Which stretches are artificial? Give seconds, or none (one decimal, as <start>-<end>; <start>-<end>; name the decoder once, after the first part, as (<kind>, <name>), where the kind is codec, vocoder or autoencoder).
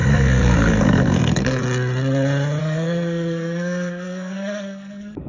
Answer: 0.0-1.6 (codec, SNAC); 2.6-5.3